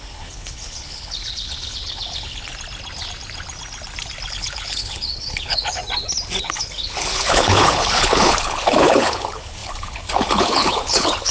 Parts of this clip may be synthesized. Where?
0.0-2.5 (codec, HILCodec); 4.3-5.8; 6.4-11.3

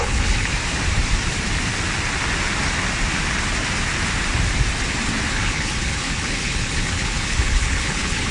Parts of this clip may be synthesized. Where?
0.0-0.5 (codec, HILCodec); 5.3-8.3